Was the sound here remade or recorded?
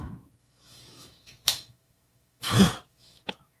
remade